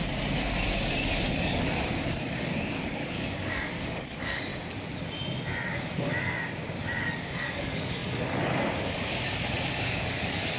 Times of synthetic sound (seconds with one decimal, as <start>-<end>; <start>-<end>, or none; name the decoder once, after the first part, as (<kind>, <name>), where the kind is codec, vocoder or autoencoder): 1.3-4.5 (codec, DAC); 7.0-10.6